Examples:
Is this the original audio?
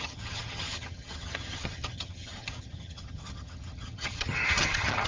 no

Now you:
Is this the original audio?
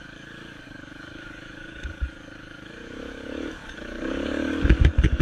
no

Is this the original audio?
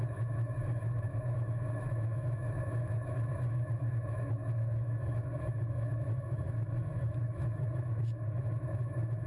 no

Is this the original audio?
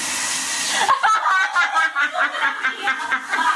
yes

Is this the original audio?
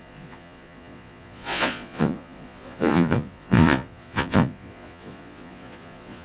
no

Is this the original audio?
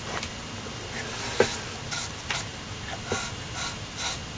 yes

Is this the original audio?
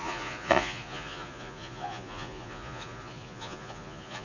no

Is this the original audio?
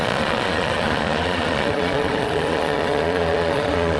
no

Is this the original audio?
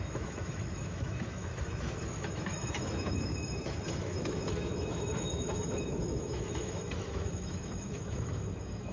no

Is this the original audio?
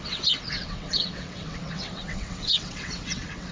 no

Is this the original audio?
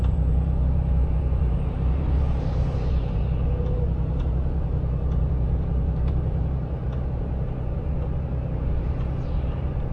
no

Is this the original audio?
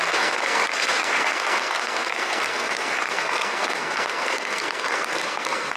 no